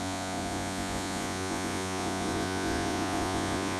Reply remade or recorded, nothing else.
remade